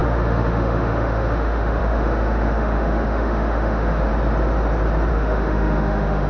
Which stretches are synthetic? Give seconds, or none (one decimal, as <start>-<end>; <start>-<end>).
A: 0.0-4.1; 5.1-6.3